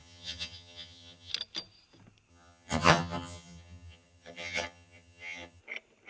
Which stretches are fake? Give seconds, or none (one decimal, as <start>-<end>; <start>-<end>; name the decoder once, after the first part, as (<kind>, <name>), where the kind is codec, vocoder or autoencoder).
0.0-1.3 (vocoder, HiFi-GAN); 2.3-5.6